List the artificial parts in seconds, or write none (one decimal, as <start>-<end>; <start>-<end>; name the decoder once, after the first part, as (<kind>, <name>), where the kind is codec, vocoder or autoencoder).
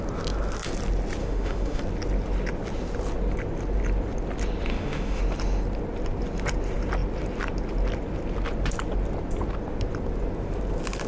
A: 1.2-1.8 (autoencoder, DAC-VAE); 4.7-5.2